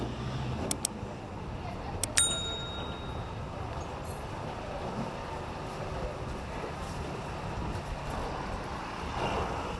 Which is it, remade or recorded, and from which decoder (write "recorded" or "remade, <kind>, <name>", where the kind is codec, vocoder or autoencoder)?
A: recorded